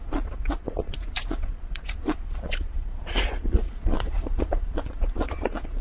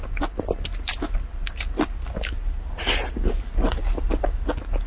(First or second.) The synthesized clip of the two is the first